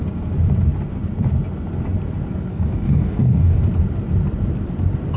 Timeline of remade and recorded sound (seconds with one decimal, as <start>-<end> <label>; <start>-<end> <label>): 0.0-2.5 recorded; 2.5-3.6 remade; 3.6-5.2 recorded